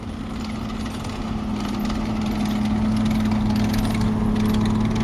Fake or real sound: real